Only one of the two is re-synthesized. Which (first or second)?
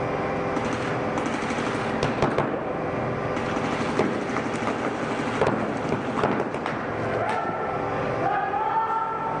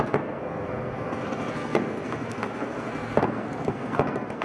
second